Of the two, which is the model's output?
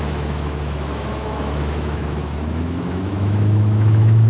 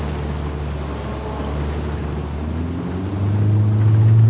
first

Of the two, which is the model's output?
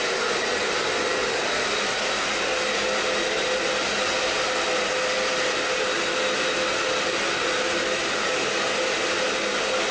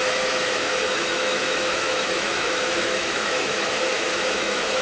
second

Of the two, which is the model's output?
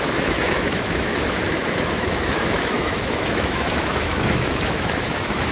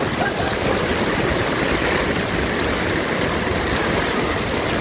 first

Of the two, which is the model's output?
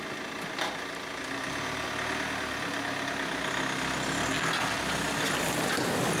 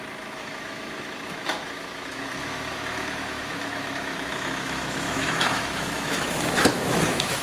second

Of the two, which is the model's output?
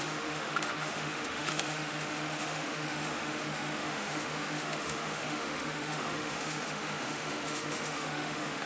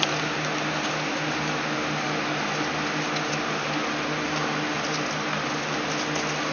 first